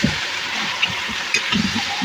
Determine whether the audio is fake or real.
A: fake